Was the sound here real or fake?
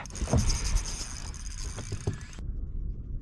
real